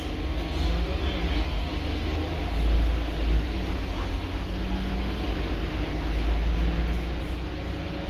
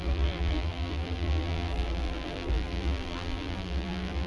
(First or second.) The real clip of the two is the first